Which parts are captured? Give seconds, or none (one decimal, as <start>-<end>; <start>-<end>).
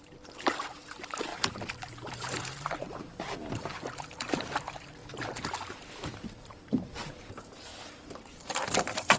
5.0-5.7; 7.7-8.4